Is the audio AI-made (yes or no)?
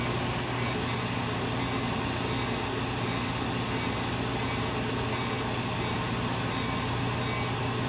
no